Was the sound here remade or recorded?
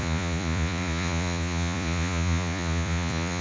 remade